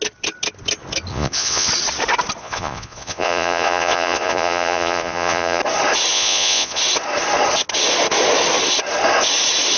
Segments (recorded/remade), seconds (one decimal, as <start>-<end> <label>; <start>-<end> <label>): 0.0-1.1 recorded; 1.1-1.7 remade; 1.7-2.4 recorded; 2.4-5.6 remade; 5.6-6.1 recorded; 6.1-6.8 remade; 6.8-9.8 recorded